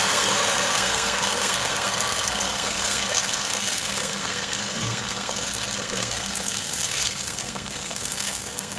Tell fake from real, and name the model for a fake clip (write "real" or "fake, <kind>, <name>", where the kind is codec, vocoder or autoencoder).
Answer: fake, codec, SNAC